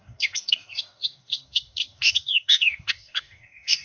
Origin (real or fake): fake